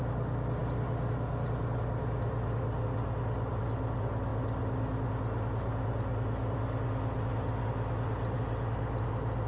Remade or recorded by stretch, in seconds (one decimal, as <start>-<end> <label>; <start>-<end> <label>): 0.0-9.5 recorded